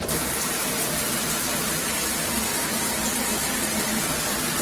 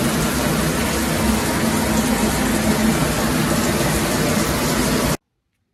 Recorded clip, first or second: second